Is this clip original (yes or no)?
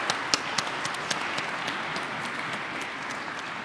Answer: yes